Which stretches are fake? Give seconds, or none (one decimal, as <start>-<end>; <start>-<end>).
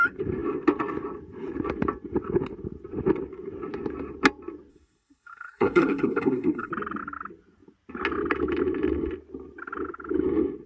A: 4.7-6.7